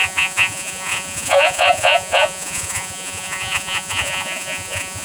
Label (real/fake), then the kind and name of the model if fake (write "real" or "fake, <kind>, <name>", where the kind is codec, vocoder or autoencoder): fake, vocoder, Vocos